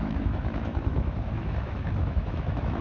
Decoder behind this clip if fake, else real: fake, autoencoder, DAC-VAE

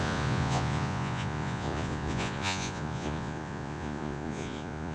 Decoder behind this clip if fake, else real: fake, vocoder, Vocos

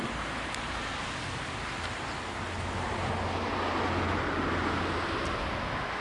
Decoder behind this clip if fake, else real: real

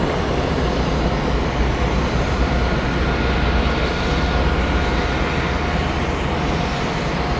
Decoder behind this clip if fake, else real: real